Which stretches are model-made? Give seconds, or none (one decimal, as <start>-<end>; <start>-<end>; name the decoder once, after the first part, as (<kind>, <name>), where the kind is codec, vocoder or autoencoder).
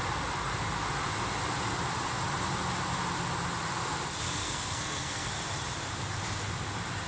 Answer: 4.4-5.3 (codec, SNAC)